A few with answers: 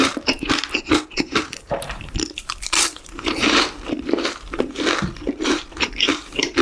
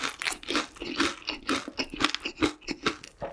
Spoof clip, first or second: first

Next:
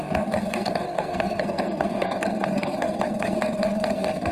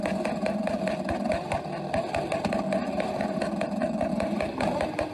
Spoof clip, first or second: first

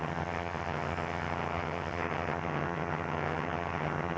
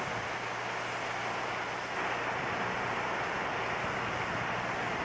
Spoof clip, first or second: first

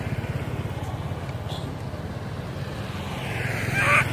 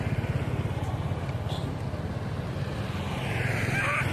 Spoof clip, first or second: second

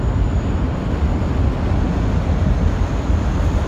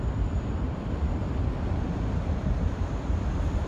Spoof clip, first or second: second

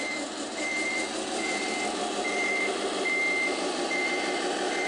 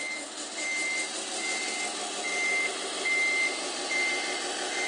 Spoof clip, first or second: first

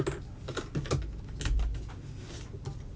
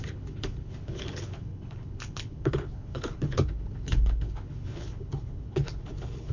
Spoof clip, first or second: second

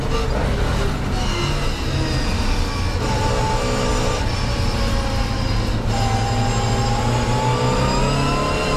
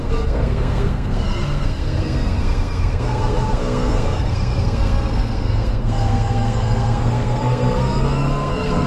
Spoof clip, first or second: second